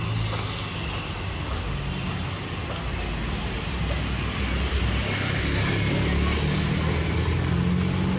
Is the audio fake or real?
real